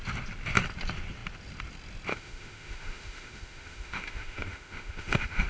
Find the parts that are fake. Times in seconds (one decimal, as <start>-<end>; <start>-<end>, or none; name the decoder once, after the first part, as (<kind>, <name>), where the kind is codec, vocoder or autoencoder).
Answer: 2.1-5.5 (autoencoder, DAC-VAE)

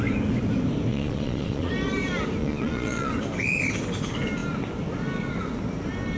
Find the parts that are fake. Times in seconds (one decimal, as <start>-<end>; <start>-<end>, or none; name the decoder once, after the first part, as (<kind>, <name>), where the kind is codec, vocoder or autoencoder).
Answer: 0.9-1.7 (vocoder, Vocos); 2.4-3.1